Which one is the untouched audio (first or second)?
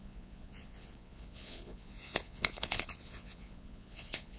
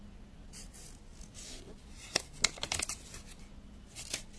second